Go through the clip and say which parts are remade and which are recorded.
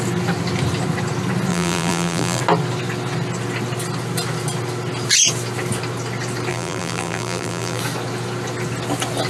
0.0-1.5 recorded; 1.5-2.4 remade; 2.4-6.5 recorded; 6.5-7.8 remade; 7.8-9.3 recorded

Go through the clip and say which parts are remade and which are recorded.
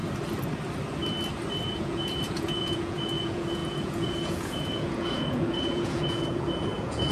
0.0-1.6 recorded; 1.6-7.1 remade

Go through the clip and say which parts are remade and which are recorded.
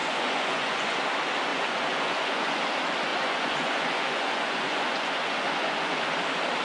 0.0-1.0 remade; 1.0-1.5 recorded; 1.5-2.6 remade; 2.6-3.1 recorded; 3.1-6.0 remade; 6.0-6.6 recorded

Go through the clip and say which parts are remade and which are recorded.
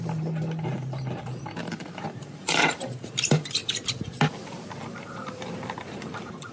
0.0-3.6 remade; 3.6-5.1 recorded; 5.1-6.5 remade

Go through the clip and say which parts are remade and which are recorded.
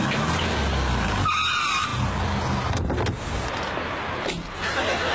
0.0-5.1 recorded